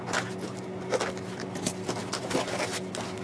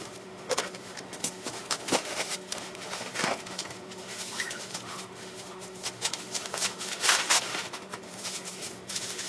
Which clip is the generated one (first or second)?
second